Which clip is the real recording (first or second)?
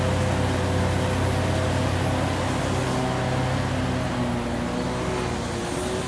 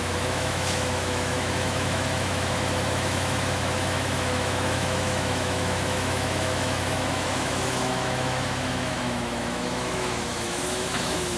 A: first